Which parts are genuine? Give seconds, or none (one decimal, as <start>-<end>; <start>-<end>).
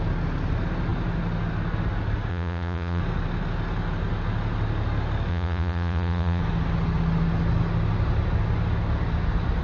0.0-2.3; 3.0-5.3; 6.4-9.6